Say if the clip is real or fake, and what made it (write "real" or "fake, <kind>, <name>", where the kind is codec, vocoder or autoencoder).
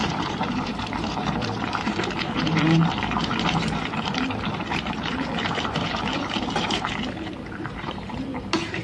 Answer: fake, vocoder, BigVGAN v2